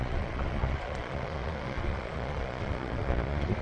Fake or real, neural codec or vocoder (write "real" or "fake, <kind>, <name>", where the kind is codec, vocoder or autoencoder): fake, vocoder, Vocos